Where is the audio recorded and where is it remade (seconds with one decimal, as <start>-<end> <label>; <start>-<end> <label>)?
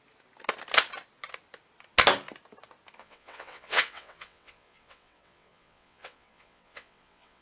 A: 0.0-3.0 recorded; 3.0-7.4 remade